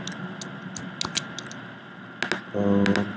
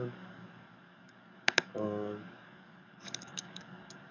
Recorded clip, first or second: first